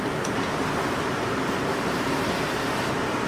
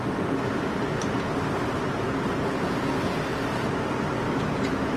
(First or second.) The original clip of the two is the second